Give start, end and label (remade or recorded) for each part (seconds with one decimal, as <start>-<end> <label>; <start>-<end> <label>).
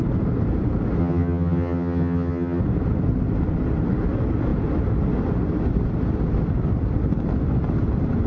0.0-1.0 recorded; 1.0-2.6 remade; 2.6-8.3 recorded